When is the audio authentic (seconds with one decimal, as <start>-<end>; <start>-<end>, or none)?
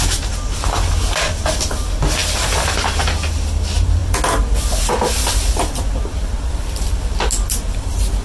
0.0-8.2